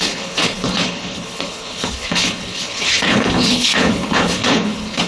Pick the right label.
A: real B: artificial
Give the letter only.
B